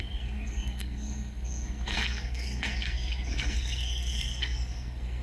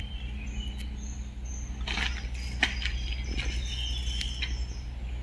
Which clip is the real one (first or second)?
second